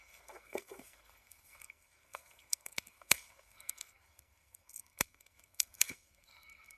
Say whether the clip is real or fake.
fake